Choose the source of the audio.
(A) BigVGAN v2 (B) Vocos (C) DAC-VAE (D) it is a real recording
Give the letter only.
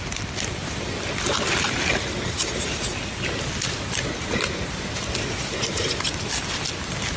D